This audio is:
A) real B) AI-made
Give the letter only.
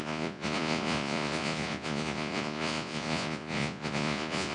B